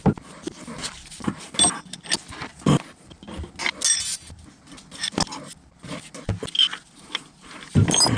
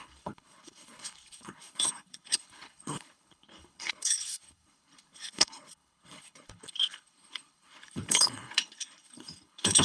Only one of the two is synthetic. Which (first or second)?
second